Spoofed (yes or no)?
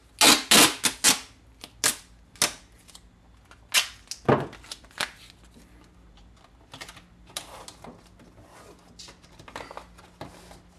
no